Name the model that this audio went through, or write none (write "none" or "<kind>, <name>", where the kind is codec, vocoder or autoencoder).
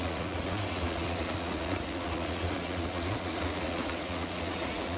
vocoder, Vocos